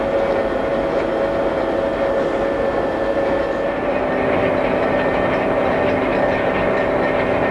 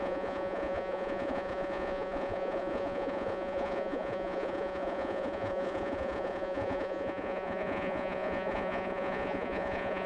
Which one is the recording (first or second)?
first